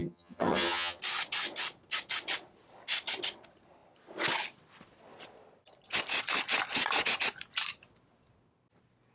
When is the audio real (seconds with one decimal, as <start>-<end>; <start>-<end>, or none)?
1.0-9.1